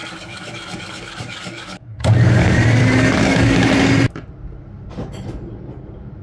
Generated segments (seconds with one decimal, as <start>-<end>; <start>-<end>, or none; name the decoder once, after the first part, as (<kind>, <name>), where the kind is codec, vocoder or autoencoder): 0.0-3.7 (codec, DAC)